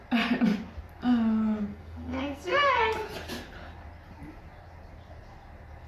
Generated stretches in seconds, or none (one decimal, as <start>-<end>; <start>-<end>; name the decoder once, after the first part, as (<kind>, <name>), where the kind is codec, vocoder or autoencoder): 1.7-2.8 (codec, SNAC)